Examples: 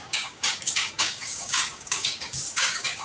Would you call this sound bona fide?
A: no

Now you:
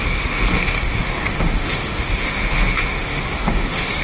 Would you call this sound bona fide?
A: no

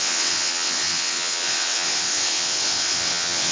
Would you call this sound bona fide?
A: no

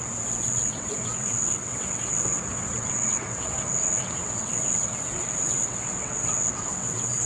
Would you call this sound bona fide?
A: no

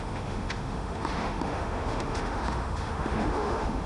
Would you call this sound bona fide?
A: no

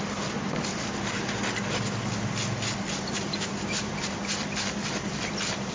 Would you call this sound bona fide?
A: yes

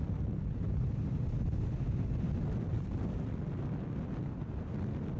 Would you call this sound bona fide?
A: yes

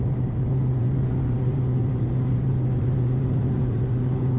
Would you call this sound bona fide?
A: no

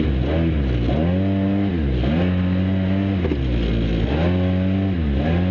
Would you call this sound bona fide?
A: yes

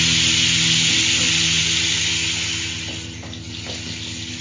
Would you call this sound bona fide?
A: yes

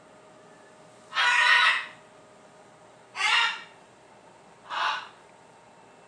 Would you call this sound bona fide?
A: yes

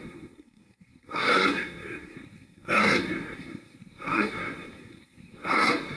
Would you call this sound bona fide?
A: no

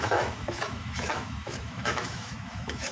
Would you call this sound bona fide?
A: no